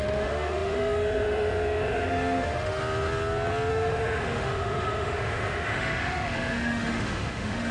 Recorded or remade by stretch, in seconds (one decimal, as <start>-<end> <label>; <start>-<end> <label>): 0.0-2.8 remade; 2.8-3.7 recorded; 3.7-7.7 remade